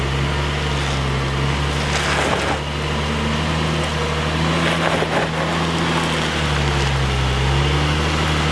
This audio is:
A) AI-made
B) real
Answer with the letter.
B